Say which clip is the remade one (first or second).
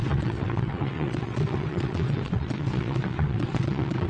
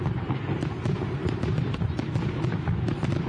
first